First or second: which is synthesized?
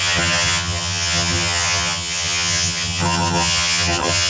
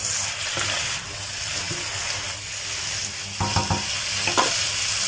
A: first